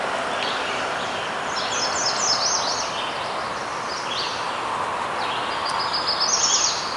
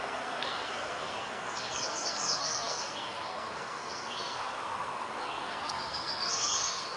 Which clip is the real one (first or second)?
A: first